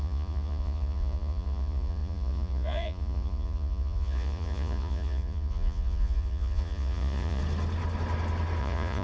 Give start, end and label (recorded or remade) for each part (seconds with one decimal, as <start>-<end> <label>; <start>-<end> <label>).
0.0-7.4 remade; 7.4-8.6 recorded; 8.6-9.0 remade